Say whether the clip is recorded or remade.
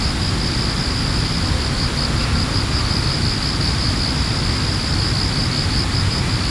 recorded